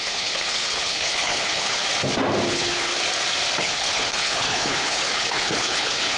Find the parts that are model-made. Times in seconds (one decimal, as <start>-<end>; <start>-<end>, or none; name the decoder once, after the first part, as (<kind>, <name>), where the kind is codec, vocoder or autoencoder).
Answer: 0.0-1.8 (codec, HILCodec); 2.5-2.9; 3.6-6.2